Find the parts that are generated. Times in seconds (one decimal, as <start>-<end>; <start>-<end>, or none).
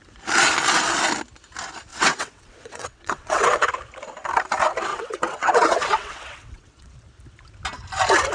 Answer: 1.9-3.7; 4.9-6.9